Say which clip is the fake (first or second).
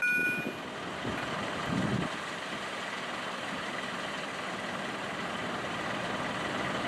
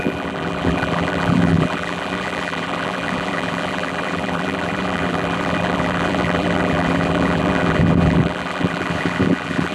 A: second